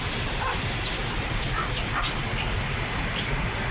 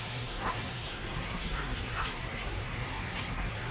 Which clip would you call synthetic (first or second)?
second